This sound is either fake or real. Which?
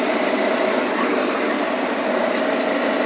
real